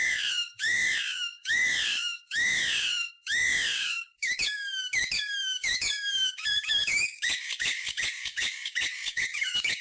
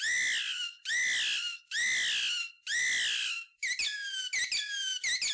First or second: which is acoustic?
second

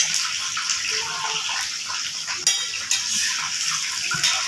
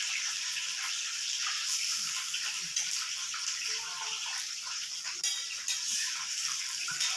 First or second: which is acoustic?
first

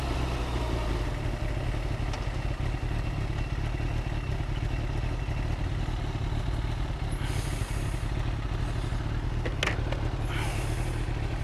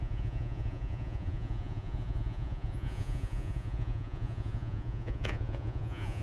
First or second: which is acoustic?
first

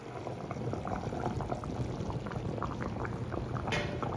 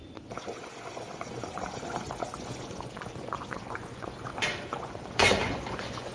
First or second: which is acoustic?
first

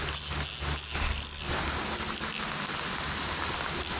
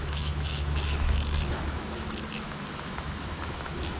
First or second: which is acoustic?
first